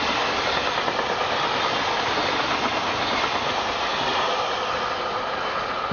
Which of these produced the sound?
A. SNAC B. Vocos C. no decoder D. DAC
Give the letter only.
C